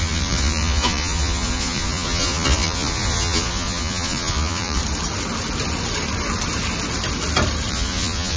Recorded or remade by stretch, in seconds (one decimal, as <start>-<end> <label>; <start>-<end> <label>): 0.0-4.8 remade; 4.8-7.7 recorded; 7.7-8.4 remade